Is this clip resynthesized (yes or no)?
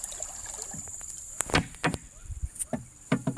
no